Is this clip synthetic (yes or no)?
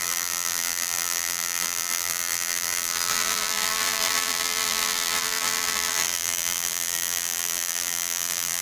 yes